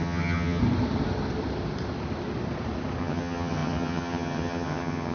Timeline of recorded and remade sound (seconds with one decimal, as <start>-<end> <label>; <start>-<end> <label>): 0.0-0.6 remade; 0.6-3.0 recorded; 3.0-5.1 remade